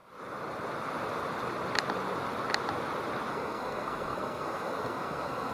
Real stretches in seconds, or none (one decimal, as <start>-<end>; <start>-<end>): 0.0-3.3